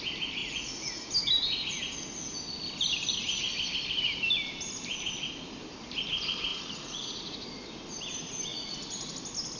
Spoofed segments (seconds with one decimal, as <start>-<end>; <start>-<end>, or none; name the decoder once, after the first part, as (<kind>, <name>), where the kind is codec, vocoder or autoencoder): 0.4-1.1 (vocoder, Vocos); 6.5-7.2; 8.5-9.1